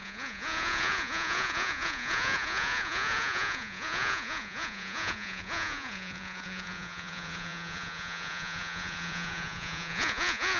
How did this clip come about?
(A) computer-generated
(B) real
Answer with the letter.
A